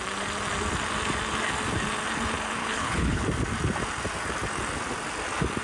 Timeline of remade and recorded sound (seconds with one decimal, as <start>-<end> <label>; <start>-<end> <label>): 0.0-2.6 recorded; 2.6-3.2 remade; 3.2-5.6 recorded